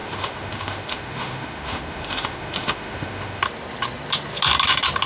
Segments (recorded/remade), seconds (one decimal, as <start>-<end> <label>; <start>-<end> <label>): 0.0-3.4 remade; 3.4-5.1 recorded